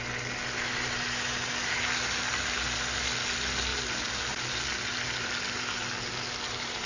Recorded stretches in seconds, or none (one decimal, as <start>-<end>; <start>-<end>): 0.0-6.9